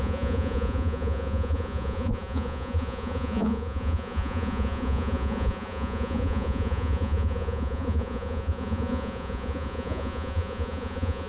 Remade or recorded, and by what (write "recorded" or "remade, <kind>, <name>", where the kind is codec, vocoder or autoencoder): remade, vocoder, Vocos